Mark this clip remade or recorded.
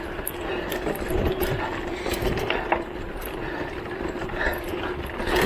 recorded